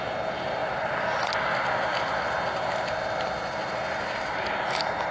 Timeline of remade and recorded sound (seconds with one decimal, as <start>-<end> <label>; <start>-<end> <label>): 0.0-0.6 recorded; 0.6-1.1 remade; 1.1-5.1 recorded

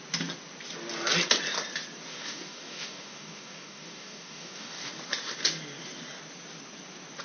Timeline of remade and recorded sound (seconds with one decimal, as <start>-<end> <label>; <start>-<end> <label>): 0.0-2.1 recorded; 2.1-4.9 remade; 4.9-7.2 recorded

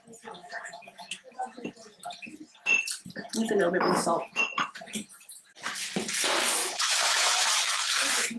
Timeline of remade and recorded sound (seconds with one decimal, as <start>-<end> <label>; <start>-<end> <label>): 0.0-0.4 recorded; 0.4-1.7 remade; 1.7-3.8 recorded; 3.8-4.5 remade; 4.5-6.6 recorded; 6.6-8.4 remade

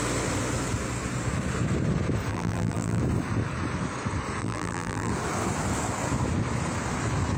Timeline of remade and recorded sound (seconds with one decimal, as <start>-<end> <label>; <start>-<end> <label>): 0.0-2.3 recorded; 2.3-3.0 remade; 3.0-4.4 recorded; 4.4-5.1 remade; 5.1-7.4 recorded

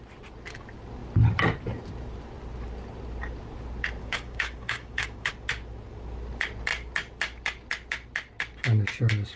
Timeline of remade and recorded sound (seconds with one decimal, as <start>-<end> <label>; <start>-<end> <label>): 0.0-4.0 recorded; 4.0-5.3 remade; 5.3-9.4 recorded